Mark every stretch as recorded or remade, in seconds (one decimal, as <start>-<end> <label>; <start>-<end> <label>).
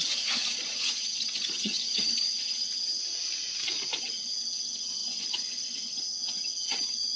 0.0-3.0 remade; 3.0-4.0 recorded; 4.0-7.2 remade